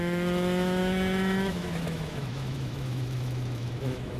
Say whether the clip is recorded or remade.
remade